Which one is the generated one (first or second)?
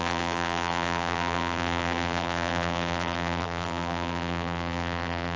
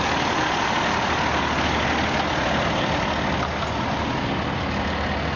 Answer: first